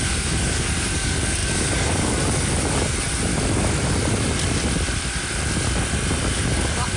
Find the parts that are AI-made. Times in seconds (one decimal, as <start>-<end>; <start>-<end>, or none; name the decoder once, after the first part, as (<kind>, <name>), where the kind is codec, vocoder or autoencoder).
0.0-3.3 (codec, DAC); 6.2-7.0